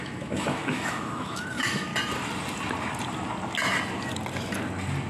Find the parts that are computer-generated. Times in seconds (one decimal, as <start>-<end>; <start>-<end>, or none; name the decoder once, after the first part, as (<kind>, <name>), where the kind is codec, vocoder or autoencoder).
0.0-1.9 (autoencoder, DAC-VAE)